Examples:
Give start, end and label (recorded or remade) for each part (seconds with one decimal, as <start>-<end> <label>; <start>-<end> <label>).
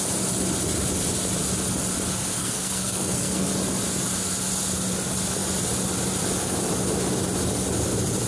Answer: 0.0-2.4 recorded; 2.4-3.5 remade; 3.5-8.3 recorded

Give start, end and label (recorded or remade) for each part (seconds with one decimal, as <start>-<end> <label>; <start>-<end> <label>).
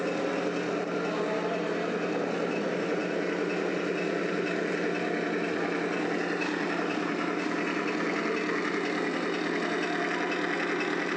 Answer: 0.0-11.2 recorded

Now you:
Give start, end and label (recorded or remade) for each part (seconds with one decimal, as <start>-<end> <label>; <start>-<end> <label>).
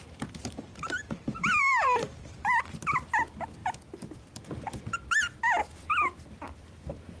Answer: 0.0-0.7 recorded; 0.7-2.7 remade; 2.7-7.2 recorded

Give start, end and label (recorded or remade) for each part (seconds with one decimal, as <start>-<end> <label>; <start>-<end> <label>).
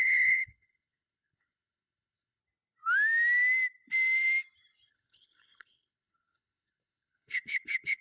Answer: 0.0-2.4 remade; 2.4-4.9 recorded; 4.9-8.0 remade